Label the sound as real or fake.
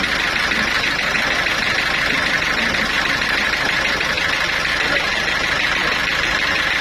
real